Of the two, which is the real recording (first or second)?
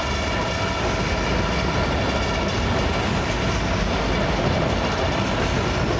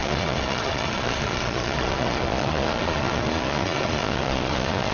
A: first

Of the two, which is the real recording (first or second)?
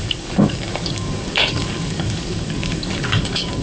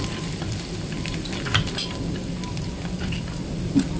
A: second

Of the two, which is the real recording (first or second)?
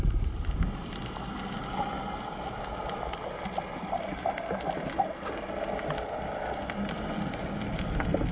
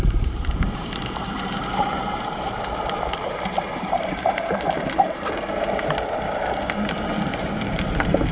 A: first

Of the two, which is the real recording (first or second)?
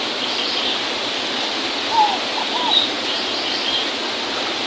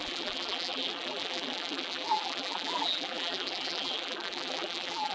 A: first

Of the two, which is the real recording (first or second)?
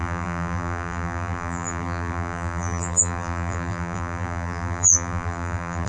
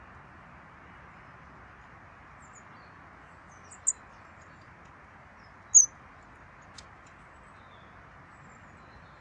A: second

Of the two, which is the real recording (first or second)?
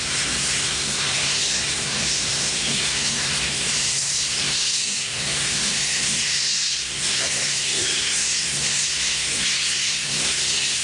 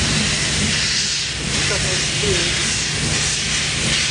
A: second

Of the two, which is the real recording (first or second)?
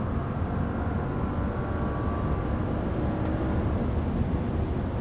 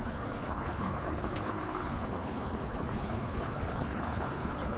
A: first